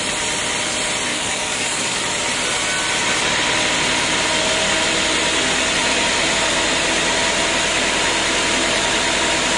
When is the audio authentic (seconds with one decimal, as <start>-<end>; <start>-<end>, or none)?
0.0-1.1; 2.0-9.6